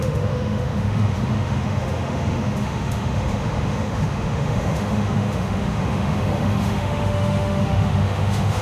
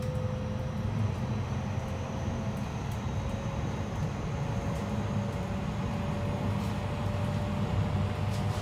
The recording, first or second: second